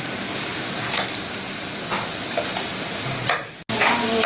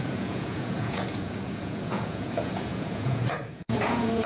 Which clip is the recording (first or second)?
first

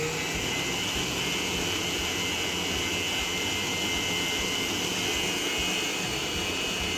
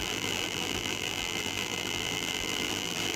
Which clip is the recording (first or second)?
first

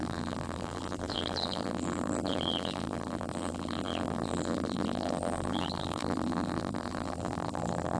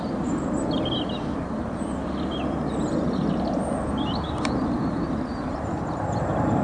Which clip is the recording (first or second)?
second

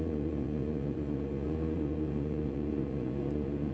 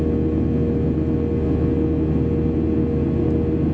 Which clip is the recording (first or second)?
second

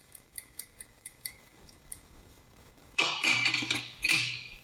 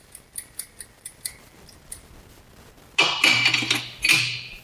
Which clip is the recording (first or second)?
second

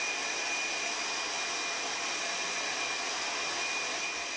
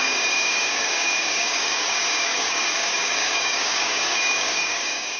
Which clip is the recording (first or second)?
first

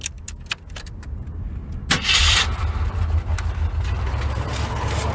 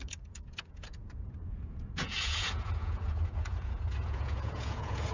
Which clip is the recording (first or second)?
first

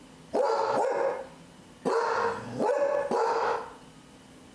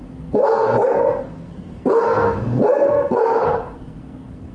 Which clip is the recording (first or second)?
first